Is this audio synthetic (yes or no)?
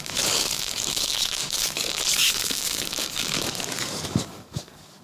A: yes